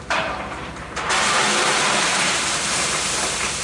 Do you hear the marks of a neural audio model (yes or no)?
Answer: yes